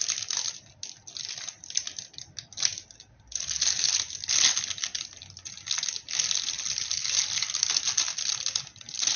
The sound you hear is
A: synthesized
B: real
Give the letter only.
B